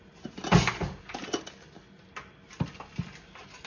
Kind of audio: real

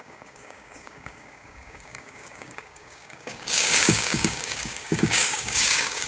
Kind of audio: fake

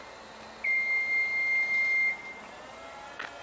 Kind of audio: real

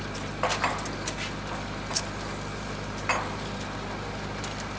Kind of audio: real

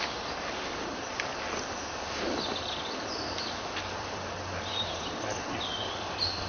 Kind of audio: fake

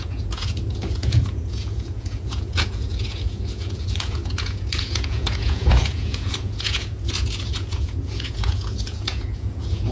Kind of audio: fake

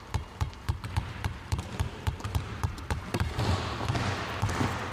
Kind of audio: fake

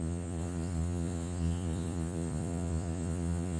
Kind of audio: fake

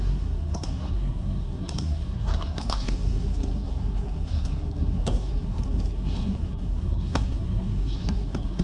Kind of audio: fake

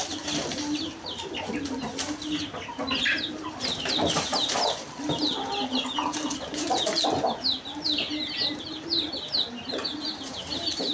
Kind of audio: real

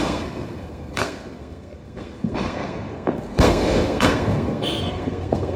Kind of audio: fake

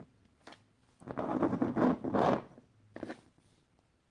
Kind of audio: real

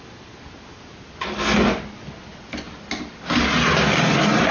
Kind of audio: real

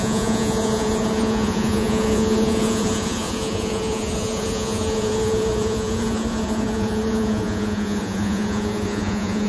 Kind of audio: fake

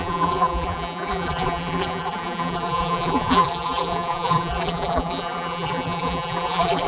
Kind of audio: fake